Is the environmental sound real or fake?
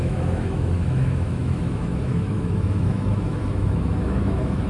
fake